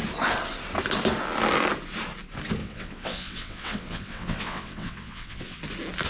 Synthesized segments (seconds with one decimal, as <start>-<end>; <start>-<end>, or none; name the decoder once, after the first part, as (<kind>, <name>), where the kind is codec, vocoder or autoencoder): 2.6-5.6 (vocoder, WaveNeXt)